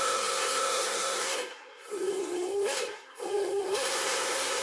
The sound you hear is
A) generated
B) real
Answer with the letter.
A